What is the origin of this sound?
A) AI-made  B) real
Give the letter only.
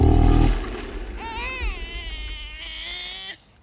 B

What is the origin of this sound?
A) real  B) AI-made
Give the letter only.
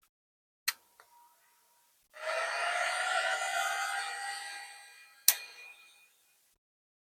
A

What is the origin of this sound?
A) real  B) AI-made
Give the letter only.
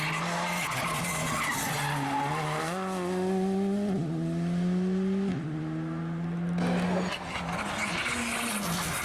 A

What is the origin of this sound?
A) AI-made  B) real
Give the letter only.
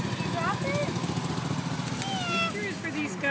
B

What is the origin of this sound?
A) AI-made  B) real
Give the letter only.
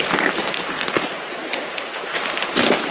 B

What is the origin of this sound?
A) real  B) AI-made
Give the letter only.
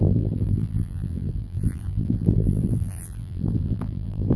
B